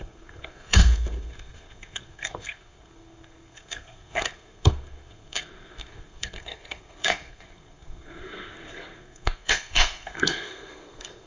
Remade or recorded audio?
remade